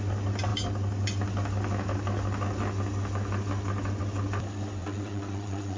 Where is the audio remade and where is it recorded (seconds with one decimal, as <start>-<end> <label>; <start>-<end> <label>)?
0.0-4.8 recorded; 4.8-5.8 remade